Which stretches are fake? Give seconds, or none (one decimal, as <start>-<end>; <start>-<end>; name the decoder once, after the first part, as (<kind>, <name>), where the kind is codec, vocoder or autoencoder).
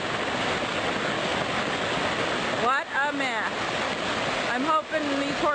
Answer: none